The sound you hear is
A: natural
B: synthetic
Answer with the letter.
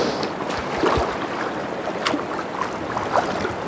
A